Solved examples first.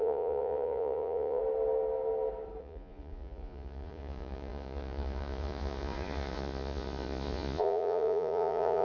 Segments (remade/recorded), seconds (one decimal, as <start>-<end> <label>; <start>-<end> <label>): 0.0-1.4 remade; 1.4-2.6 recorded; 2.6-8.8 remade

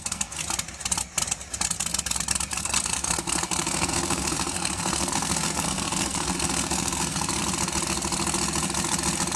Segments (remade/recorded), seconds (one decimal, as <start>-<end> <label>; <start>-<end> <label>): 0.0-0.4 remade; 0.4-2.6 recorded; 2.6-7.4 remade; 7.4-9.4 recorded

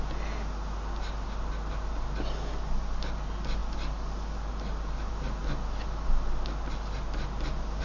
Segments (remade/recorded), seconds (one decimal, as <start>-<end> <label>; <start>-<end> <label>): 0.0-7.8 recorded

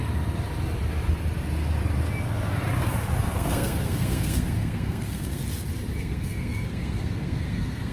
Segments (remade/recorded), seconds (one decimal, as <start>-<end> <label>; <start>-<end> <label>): 0.0-3.2 recorded; 3.2-5.4 remade; 5.4-6.0 recorded; 6.0-7.9 remade